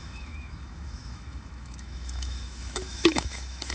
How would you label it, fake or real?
fake